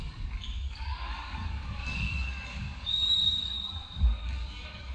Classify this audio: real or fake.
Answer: fake